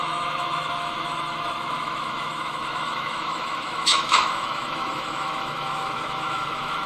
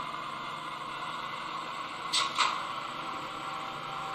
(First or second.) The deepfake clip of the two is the first